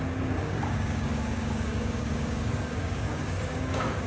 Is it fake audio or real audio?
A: fake